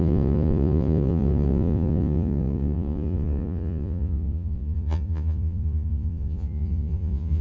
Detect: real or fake fake